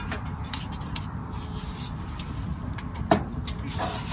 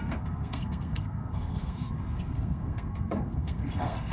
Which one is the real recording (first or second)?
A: first